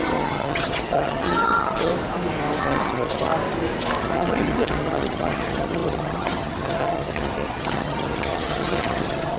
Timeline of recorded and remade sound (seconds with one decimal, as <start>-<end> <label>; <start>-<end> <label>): 0.0-1.9 remade; 1.9-2.6 recorded; 2.6-3.3 remade; 3.3-4.0 recorded; 4.0-9.4 remade